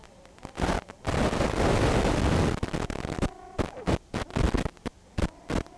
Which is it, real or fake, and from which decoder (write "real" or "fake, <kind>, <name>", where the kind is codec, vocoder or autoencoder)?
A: real